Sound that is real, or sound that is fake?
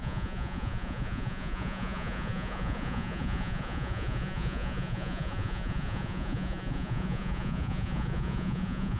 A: fake